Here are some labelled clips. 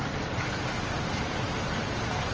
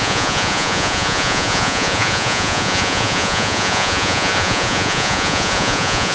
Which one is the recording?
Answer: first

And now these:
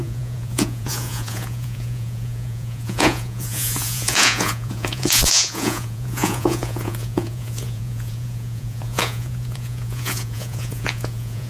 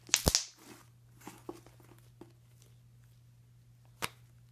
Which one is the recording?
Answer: second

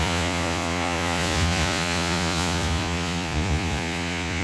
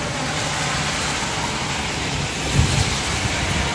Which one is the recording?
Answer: second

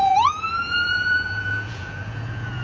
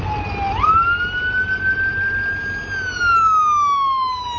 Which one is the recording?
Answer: second